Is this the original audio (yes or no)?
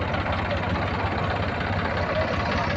yes